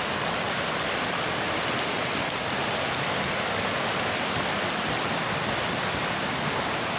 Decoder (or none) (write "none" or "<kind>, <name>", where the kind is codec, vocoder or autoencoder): none